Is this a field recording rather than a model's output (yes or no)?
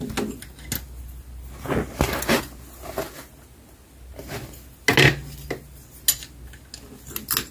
yes